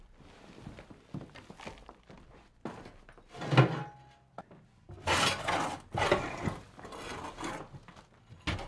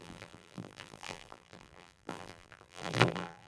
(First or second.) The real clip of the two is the first